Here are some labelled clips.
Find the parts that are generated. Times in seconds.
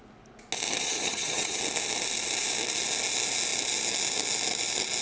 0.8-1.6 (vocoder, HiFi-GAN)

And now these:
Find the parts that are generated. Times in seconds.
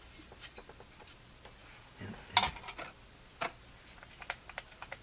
none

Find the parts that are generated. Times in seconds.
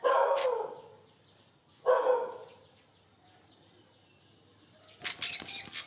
0.0-0.4 (autoencoder, DAC-VAE); 1.7-2.4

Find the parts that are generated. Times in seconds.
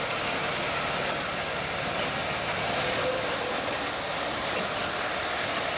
none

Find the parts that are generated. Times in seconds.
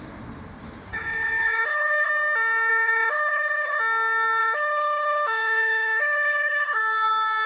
0.9-2.1 (codec, HILCodec); 2.7-3.8; 4.4-6.8